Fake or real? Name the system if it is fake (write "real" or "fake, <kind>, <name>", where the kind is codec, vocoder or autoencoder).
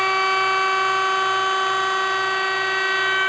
real